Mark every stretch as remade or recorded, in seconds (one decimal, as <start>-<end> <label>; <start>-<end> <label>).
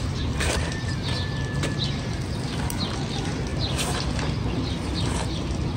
0.0-5.8 recorded